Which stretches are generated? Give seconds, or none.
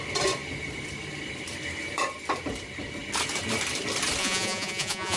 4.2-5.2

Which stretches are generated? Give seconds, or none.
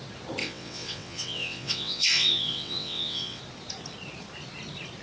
0.4-3.4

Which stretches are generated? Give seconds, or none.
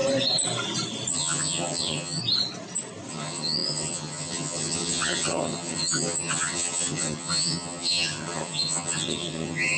1.1-2.2; 3.1-9.8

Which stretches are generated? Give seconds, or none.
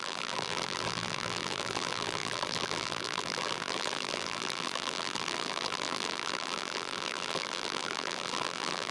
0.0-8.9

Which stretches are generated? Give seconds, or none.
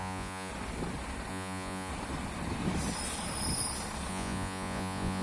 0.0-0.5; 1.3-1.9; 4.1-5.2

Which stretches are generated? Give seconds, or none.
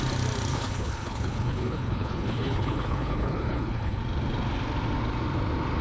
0.5-4.0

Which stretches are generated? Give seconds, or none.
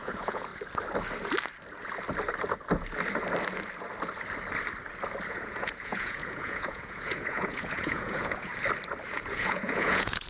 0.0-0.5; 5.3-8.5; 9.1-10.3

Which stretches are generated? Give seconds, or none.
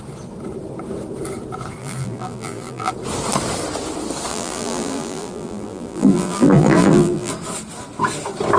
1.8-2.9; 4.3-7.3